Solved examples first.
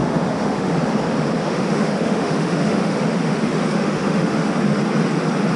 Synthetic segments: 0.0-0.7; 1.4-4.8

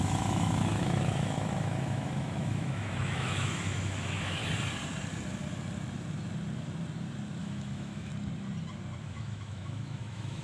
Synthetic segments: 0.0-4.4; 7.4-8.1; 9.0-10.4